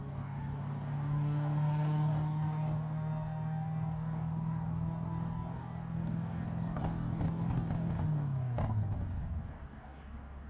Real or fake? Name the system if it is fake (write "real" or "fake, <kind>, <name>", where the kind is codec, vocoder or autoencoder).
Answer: fake, codec, DAC